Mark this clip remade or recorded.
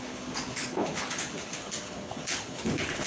remade